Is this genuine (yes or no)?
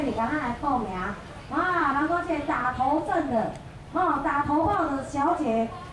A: no